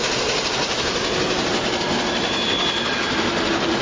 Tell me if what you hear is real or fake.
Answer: real